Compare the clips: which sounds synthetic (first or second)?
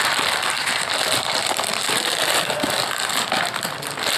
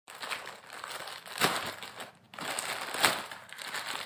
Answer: first